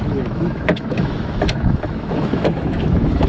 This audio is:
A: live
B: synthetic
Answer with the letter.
B